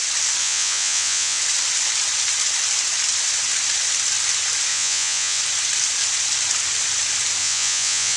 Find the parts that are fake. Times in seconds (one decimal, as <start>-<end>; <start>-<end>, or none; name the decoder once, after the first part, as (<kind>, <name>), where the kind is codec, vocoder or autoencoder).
0.4-1.4 (vocoder, Vocos); 4.7-5.4; 7.4-8.2